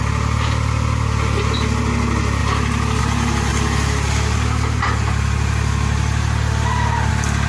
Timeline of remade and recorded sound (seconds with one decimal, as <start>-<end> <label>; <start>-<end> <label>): 0.0-7.5 recorded